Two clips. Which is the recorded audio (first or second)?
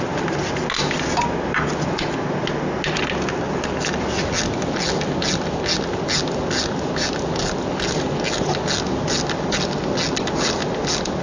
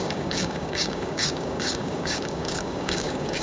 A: first